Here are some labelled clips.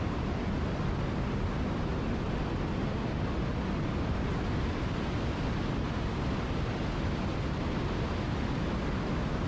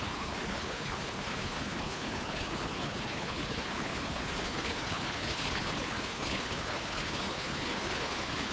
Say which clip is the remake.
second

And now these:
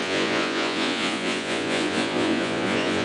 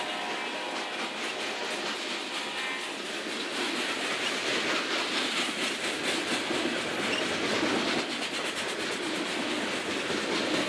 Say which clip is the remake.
first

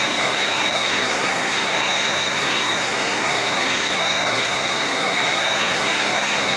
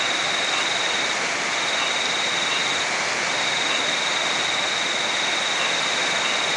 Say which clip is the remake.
first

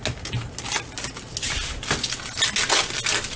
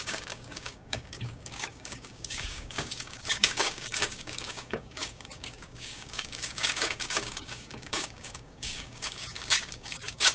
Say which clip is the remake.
second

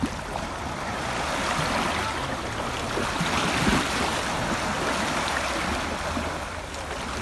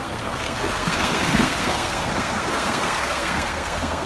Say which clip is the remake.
second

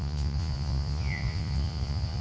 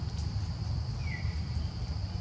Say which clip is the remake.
first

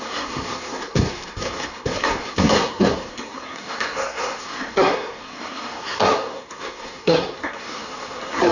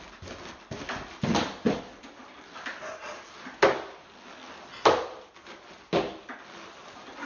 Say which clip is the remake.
first